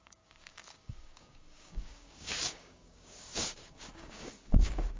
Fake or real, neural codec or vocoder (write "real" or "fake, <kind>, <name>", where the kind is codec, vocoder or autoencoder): fake, codec, DAC